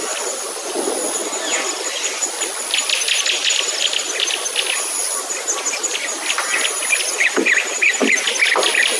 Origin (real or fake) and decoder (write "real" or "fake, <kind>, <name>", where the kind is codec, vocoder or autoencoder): real